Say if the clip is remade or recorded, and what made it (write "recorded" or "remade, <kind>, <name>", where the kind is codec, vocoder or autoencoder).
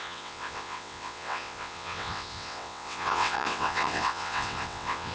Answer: remade, vocoder, WaveNeXt